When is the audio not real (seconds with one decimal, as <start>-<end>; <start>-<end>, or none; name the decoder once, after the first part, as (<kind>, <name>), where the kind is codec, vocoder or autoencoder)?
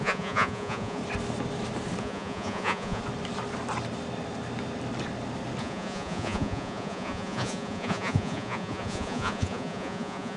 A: 0.0-1.0 (vocoder, Vocos); 2.0-3.0; 5.6-10.4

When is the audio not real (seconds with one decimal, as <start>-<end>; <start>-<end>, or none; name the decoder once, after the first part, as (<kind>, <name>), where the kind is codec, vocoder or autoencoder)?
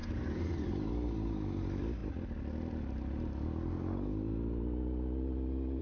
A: 0.0-0.9 (vocoder, BigVGAN v2)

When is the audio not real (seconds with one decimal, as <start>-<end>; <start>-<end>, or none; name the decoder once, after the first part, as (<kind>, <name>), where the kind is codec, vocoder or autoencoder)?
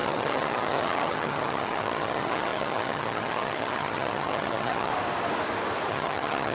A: 0.0-4.9 (vocoder, HiFi-GAN); 5.9-6.5